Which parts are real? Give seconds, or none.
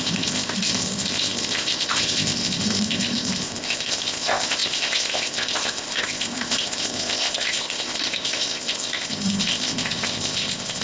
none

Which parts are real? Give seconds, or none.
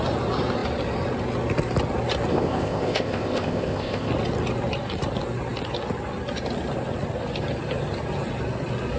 0.0-2.3; 4.1-9.0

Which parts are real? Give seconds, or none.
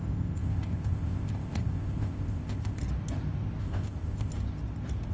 2.8-3.6; 4.3-5.1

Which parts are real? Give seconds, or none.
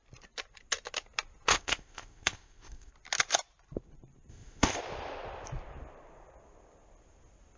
0.0-1.5; 2.9-4.3; 4.8-7.6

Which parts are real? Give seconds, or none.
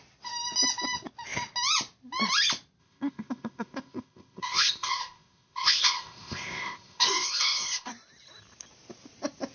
0.0-2.8; 7.9-9.5